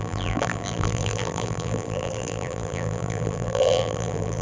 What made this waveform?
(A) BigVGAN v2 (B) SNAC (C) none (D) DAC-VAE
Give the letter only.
A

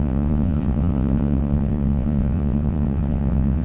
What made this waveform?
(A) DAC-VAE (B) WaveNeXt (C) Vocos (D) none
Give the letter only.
B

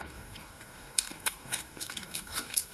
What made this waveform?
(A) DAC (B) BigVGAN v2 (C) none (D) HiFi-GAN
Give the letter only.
A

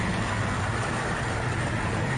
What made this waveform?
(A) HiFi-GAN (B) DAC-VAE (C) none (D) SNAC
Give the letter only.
C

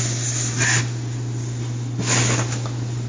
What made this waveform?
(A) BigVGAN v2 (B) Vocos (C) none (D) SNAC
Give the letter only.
C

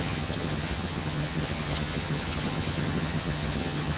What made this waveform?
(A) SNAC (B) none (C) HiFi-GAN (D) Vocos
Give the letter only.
C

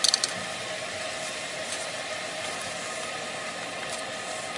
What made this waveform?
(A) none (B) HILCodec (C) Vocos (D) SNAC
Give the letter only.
A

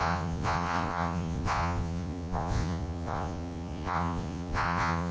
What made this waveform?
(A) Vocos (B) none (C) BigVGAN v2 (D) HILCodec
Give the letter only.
A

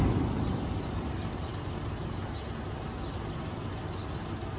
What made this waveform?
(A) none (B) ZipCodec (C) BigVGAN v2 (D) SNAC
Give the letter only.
A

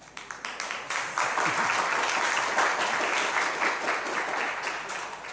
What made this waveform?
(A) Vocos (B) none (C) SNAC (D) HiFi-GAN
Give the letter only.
B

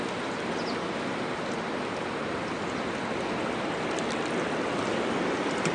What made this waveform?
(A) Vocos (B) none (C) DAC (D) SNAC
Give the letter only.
B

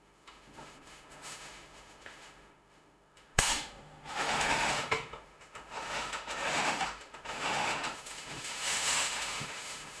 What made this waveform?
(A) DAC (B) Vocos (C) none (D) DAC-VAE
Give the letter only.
D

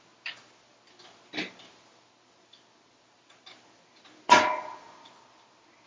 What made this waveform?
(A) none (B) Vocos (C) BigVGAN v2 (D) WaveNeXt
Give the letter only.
A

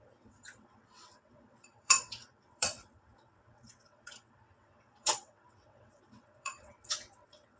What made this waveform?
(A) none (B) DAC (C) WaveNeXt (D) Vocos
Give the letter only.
C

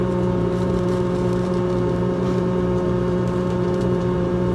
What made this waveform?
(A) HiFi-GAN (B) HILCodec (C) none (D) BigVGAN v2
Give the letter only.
D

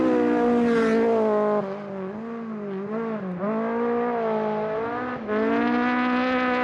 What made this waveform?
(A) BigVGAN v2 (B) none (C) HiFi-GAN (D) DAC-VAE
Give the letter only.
B